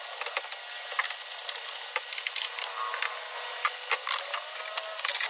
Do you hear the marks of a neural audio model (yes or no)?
no